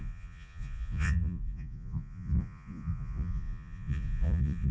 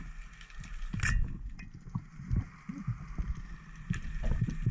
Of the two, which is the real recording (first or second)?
second